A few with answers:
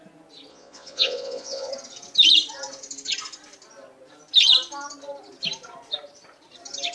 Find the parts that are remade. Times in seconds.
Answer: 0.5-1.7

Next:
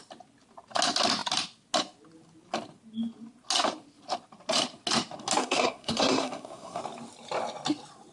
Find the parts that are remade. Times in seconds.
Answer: 5.4-6.8

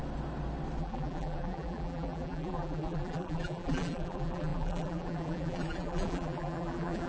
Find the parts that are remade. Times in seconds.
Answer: 0.8-7.1